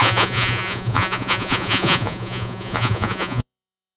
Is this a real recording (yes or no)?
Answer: no